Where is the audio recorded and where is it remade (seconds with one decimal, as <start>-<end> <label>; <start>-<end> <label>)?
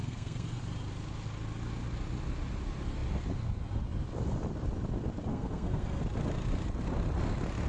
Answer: 0.0-0.6 remade; 0.6-5.3 recorded; 5.3-6.0 remade; 6.0-7.7 recorded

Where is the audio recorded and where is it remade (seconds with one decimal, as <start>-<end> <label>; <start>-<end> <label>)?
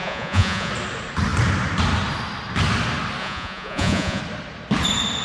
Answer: 0.0-0.7 remade; 0.7-3.2 recorded; 3.2-4.2 remade; 4.2-5.2 recorded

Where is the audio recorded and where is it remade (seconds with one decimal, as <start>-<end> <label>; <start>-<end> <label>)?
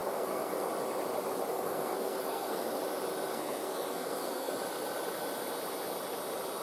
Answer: 0.0-0.7 remade; 0.7-1.5 recorded; 1.5-2.8 remade; 2.8-3.3 recorded; 3.3-4.5 remade; 4.5-6.6 recorded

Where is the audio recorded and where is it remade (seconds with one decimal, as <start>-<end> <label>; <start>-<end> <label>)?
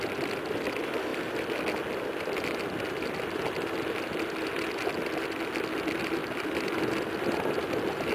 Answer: 0.0-8.1 recorded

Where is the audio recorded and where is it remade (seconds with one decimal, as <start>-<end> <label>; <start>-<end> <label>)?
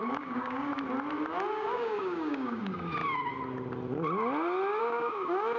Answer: 0.0-0.7 remade; 0.7-1.5 recorded; 1.5-3.0 remade; 3.0-4.8 recorded; 4.8-5.6 remade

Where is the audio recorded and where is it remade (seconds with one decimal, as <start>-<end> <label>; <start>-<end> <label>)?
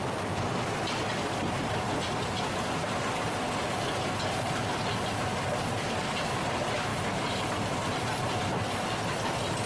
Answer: 0.0-6.9 recorded; 6.9-9.7 remade